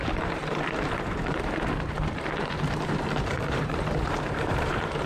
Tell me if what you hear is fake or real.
fake